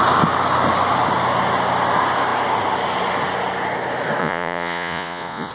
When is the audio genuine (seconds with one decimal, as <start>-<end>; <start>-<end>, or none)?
0.0-4.2